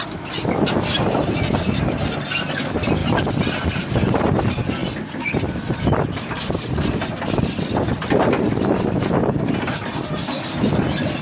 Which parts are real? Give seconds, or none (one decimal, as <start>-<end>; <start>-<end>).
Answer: 0.0-3.0; 3.8-4.8; 9.4-11.2

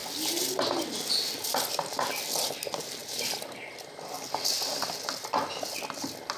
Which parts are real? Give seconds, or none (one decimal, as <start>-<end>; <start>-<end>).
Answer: 0.0-3.0; 3.7-6.4

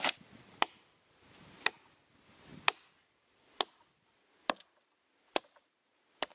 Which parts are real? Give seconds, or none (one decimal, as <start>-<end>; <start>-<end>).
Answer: 0.0-6.3

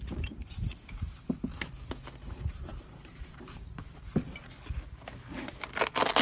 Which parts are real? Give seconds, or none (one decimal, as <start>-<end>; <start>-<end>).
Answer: 0.0-0.4; 1.1-2.7; 4.5-6.2

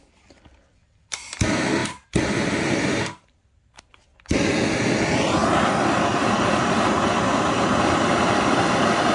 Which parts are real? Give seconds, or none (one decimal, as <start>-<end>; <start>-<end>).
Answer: 0.0-1.8; 3.9-5.4; 8.7-9.1

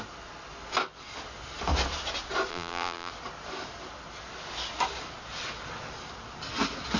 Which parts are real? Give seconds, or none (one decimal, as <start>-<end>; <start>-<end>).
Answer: 0.0-2.5; 3.1-7.0

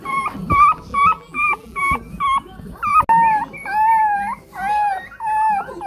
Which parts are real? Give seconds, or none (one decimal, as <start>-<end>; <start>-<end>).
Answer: 0.0-0.9; 2.0-5.9